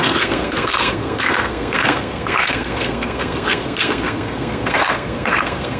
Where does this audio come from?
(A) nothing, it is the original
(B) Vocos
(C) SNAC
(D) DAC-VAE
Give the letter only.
C